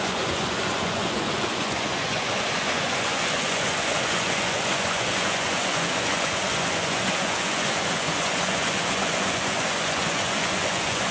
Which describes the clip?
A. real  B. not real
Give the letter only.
B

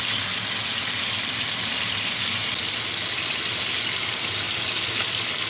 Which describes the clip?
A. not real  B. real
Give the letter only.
B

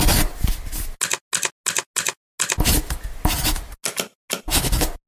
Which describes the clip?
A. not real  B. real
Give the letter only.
B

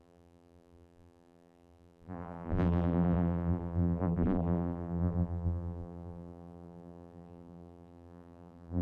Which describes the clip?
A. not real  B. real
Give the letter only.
A